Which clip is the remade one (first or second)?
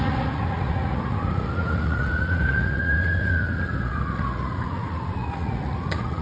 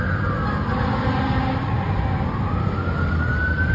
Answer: first